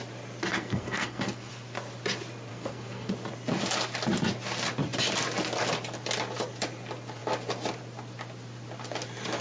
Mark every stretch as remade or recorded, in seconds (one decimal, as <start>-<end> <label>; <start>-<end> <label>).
0.0-0.5 recorded; 0.5-1.5 remade; 1.5-2.5 recorded; 2.5-3.1 remade; 3.1-9.4 recorded